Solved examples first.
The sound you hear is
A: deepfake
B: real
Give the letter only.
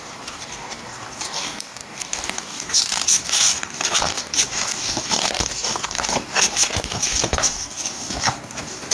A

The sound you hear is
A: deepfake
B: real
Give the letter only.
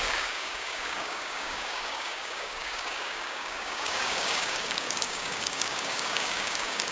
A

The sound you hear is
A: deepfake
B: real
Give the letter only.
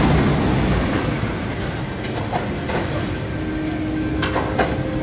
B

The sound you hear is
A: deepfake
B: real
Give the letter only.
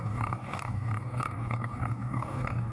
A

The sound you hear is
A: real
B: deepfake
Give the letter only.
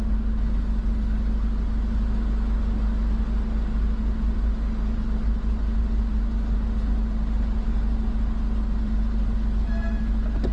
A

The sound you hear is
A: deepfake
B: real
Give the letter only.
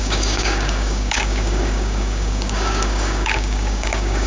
A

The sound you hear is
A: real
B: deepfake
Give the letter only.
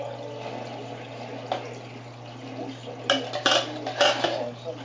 A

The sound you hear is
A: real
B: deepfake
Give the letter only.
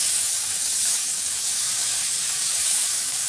B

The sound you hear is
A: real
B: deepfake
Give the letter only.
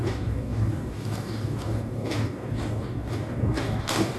B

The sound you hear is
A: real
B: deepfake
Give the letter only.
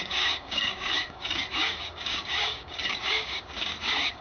B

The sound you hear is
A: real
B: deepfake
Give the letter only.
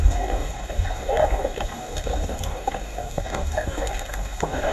B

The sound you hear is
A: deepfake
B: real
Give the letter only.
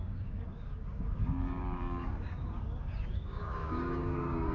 A